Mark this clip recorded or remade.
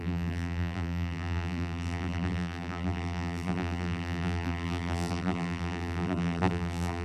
remade